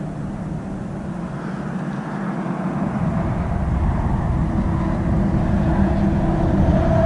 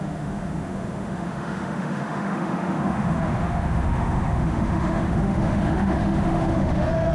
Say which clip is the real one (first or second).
first